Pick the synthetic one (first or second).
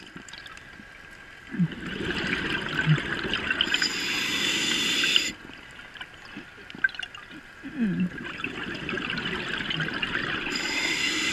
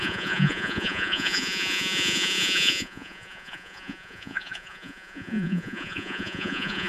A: second